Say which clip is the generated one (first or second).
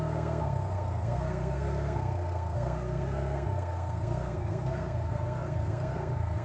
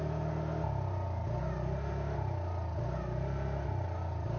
first